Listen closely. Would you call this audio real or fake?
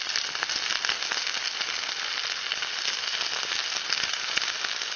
real